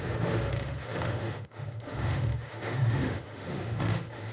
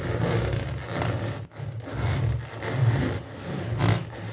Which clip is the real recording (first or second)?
second